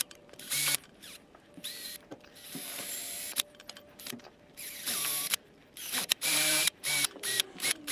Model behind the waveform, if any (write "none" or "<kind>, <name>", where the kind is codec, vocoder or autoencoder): vocoder, BigVGAN v2